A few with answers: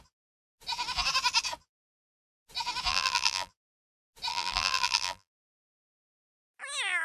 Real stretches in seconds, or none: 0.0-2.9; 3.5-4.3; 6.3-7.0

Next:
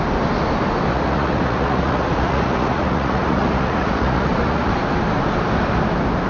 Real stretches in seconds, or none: 0.0-0.9; 4.7-6.3